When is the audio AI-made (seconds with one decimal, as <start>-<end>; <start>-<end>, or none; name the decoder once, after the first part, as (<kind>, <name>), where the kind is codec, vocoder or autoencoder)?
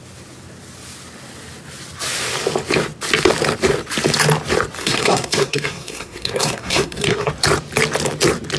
4.8-7.3 (codec, SNAC)